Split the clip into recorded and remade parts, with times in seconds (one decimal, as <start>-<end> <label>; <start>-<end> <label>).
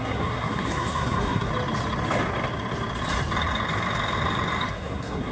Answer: 0.0-1.5 remade; 1.5-4.7 recorded; 4.7-5.3 remade